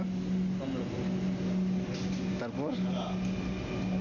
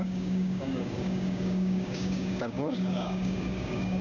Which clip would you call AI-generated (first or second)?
second